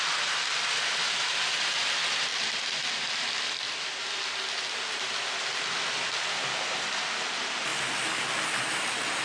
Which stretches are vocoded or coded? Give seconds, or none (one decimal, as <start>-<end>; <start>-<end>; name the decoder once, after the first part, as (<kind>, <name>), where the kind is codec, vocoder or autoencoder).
none